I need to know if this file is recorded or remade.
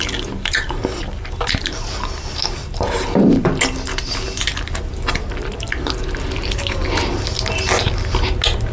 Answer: recorded